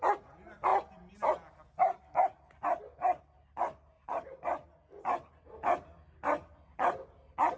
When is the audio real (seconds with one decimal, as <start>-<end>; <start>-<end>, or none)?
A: 0.0-7.6